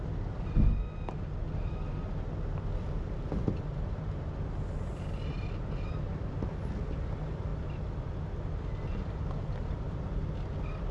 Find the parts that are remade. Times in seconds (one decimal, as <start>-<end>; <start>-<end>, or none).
7.5-8.1